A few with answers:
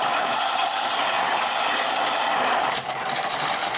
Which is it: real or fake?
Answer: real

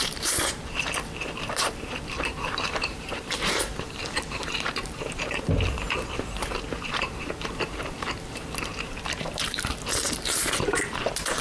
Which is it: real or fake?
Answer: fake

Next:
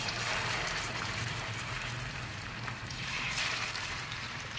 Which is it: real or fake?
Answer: fake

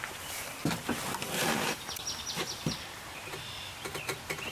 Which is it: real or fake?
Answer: fake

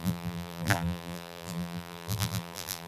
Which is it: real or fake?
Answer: fake